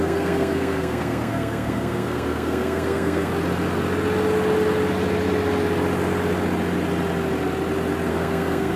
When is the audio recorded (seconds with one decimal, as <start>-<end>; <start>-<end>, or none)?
3.3-8.1